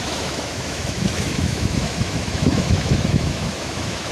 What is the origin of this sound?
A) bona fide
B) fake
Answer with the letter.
B